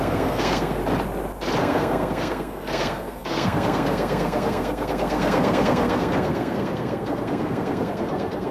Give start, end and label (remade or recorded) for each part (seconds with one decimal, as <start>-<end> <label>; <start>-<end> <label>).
0.0-0.8 remade; 0.8-1.6 recorded; 1.6-8.5 remade